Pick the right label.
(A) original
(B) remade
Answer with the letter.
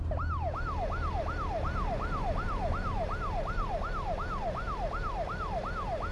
A